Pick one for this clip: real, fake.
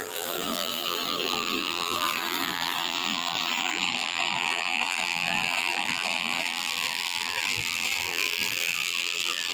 fake